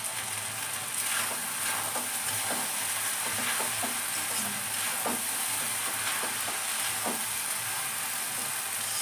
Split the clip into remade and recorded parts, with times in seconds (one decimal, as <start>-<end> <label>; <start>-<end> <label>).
0.0-9.0 recorded